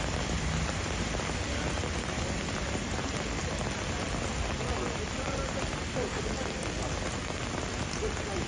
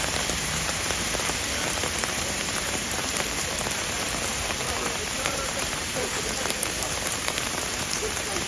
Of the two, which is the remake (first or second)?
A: second